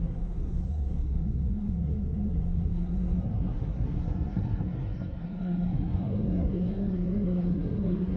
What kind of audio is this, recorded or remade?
remade